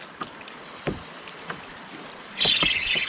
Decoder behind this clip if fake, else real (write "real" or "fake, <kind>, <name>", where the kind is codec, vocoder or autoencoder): real